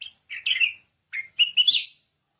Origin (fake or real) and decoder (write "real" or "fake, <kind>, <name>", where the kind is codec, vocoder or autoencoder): real